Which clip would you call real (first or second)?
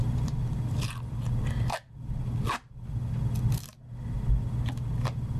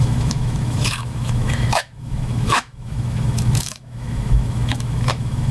first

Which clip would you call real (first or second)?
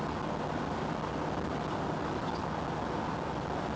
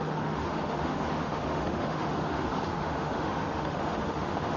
first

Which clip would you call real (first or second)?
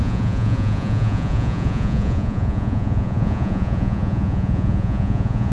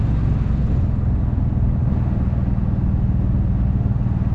second